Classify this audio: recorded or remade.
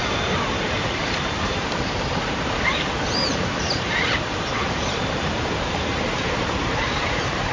remade